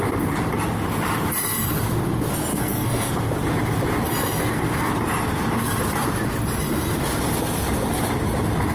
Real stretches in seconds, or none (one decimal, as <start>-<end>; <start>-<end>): 0.0-2.5; 3.1-4.4; 4.9-8.7